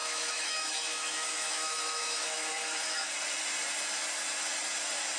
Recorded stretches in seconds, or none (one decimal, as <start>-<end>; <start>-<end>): 3.1-5.2

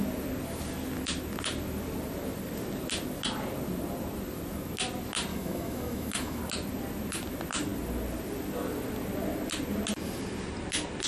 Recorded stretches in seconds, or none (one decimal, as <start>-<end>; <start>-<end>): 0.0-5.3; 6.4-11.1

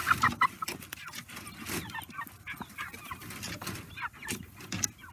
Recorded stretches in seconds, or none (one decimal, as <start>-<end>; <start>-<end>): 0.0-5.1

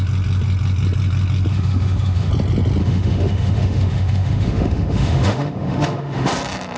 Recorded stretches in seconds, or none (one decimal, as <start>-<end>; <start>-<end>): 0.0-1.5; 2.3-2.8; 6.3-6.8

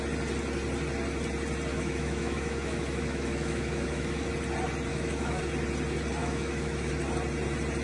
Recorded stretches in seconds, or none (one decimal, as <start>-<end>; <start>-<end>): 0.0-1.7; 4.3-4.9; 5.4-6.2; 6.9-7.8

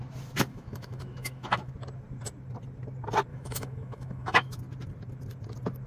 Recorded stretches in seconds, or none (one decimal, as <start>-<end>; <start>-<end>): 0.0-0.5; 1.7-3.3; 4.6-5.9

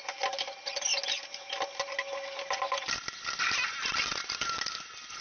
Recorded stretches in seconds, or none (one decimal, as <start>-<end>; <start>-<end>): 0.0-5.2

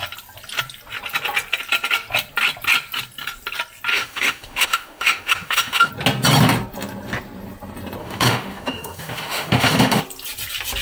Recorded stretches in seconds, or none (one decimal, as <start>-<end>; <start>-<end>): 0.0-3.9; 5.9-8.0; 10.0-10.8